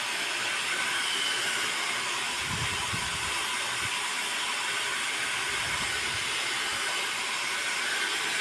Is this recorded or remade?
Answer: recorded